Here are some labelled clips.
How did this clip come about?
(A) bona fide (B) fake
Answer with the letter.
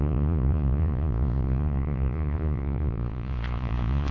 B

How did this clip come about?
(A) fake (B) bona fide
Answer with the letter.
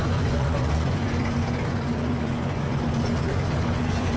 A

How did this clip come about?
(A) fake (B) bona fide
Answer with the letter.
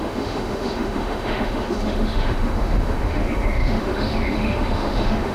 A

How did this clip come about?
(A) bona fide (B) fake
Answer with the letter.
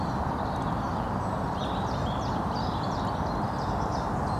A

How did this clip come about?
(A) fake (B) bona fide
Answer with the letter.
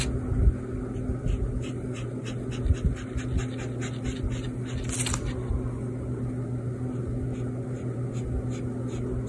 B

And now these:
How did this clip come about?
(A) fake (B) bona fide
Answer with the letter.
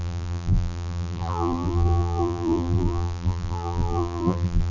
A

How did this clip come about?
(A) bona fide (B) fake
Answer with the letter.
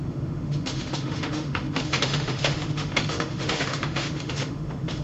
B